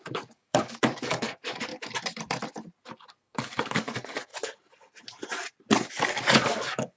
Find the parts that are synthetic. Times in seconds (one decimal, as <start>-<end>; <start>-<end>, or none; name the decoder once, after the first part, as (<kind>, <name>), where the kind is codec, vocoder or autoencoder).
0.0-1.7 (codec, DAC); 3.2-4.3; 5.9-7.0